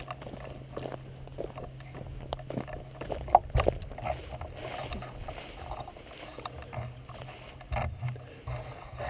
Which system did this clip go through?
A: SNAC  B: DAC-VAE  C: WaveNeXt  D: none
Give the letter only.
D